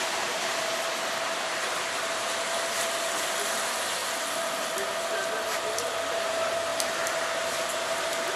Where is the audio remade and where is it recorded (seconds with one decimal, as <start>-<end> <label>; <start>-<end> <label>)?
0.0-0.7 remade; 0.7-1.4 recorded; 1.4-4.0 remade; 4.0-6.3 recorded; 6.3-6.7 remade; 6.7-8.4 recorded